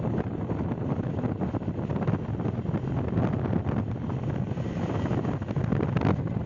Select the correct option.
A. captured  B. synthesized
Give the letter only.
A